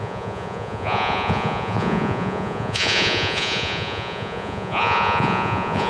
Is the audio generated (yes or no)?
yes